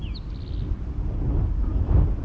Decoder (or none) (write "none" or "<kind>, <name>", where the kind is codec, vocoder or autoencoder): none